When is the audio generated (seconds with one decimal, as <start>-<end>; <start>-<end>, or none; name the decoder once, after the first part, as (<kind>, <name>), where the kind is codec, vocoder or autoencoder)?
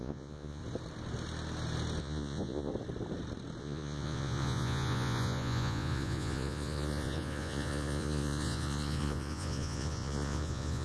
0.0-0.6 (vocoder, Vocos); 2.0-2.7; 3.6-10.8